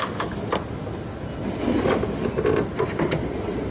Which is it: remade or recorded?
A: recorded